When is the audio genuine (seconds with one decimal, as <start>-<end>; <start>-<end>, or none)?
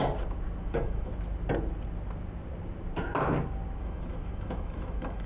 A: 0.0-0.6; 1.1-3.8